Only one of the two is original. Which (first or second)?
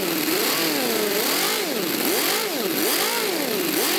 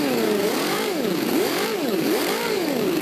first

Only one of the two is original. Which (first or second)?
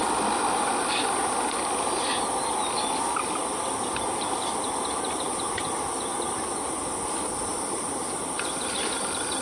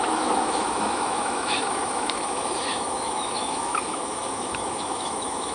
first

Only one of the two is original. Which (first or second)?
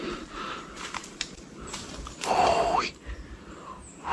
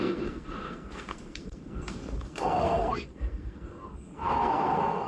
first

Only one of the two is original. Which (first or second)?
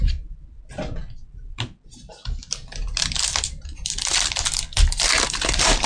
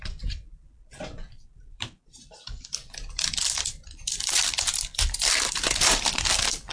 first